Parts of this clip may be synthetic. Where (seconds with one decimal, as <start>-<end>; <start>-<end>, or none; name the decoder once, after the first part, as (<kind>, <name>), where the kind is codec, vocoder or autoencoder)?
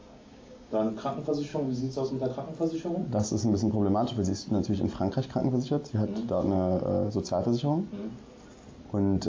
0.0-0.9 (codec, DAC); 1.5-2.1